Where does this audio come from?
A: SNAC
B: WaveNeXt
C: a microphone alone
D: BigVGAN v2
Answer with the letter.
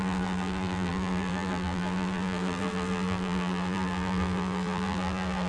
D